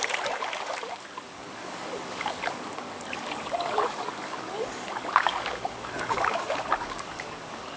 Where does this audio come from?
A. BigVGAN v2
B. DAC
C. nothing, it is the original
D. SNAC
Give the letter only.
B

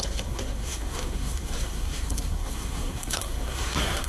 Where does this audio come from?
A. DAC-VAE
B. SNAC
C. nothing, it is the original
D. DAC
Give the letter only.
B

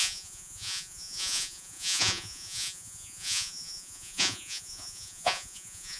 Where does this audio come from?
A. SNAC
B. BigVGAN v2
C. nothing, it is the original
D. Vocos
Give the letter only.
D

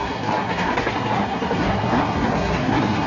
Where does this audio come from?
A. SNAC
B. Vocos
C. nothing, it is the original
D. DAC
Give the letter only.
A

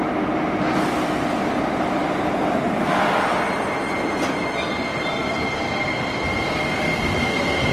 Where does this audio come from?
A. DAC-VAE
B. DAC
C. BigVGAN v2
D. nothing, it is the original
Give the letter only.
D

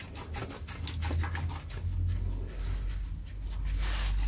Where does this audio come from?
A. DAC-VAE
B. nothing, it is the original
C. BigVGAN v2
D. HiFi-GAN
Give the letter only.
B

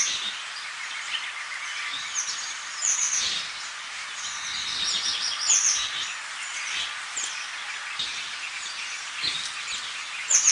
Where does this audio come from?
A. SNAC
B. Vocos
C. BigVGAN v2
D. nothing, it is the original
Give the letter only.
D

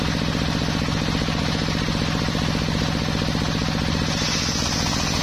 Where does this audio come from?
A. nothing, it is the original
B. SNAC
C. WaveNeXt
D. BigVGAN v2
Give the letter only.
A